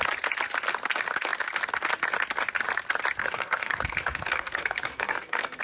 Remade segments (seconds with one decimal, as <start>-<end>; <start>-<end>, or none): 3.2-5.6